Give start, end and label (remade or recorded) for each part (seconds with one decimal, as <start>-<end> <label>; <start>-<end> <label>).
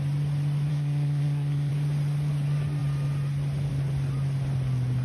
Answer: 0.0-0.7 recorded; 0.7-1.7 remade; 1.7-5.0 recorded